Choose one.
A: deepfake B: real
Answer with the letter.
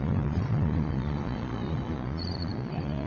A